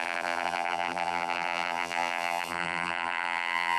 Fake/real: fake